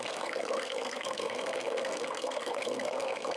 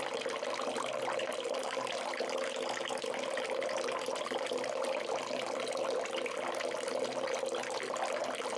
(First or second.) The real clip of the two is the second